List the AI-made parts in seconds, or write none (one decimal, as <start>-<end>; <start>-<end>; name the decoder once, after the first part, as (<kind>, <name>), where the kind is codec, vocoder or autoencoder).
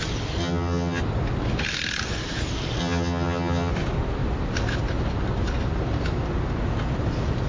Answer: 0.4-1.0 (vocoder, HiFi-GAN); 2.8-3.7